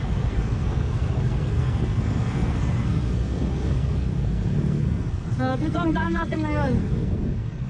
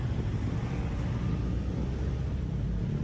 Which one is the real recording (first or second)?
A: second